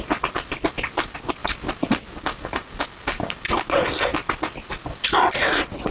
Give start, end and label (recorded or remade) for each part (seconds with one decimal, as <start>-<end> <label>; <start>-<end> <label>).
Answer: 0.0-5.9 recorded